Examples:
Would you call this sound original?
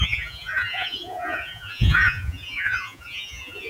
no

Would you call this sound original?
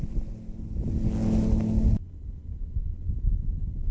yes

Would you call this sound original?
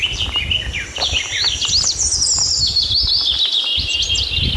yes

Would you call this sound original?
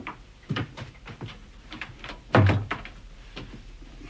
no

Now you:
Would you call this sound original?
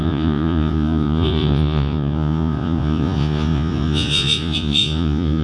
no